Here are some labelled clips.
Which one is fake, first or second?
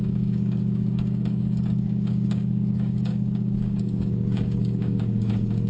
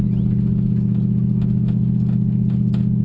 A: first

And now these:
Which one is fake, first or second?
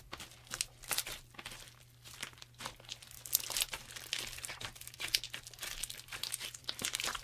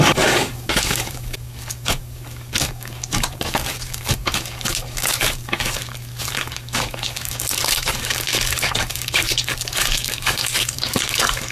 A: second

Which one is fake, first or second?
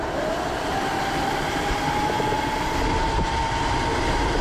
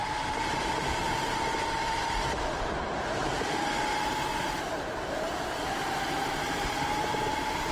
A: second